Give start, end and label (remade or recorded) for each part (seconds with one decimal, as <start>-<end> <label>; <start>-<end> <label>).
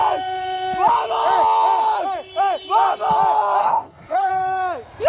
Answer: 0.0-3.6 recorded; 3.6-4.3 remade; 4.3-5.1 recorded